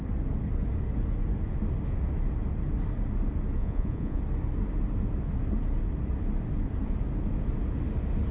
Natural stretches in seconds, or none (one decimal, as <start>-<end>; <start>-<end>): 0.0-3.6; 4.2-8.3